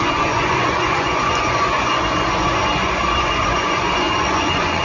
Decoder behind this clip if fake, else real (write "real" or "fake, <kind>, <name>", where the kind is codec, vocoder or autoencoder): fake, vocoder, Vocos